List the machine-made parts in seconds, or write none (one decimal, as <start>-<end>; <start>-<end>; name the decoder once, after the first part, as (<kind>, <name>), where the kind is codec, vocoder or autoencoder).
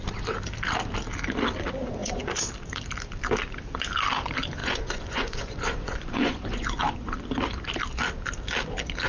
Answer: 2.0-2.5 (vocoder, Vocos); 4.6-6.8